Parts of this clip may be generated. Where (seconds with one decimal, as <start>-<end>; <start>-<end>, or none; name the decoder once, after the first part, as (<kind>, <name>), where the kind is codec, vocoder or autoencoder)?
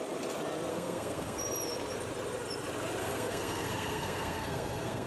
0.7-1.4 (codec, SNAC); 3.0-5.1